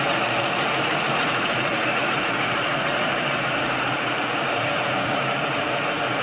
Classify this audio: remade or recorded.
remade